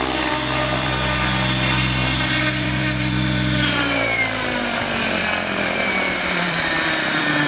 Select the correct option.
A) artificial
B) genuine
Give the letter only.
A